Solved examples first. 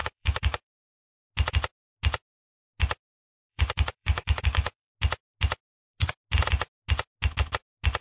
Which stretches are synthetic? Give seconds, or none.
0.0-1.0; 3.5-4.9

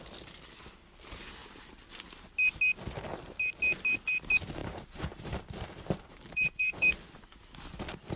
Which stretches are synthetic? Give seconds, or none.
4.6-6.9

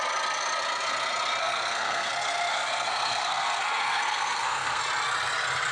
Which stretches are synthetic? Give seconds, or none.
1.4-4.8

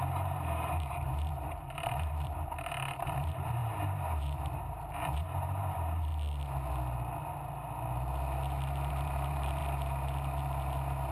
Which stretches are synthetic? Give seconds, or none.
0.0-6.1; 8.9-9.6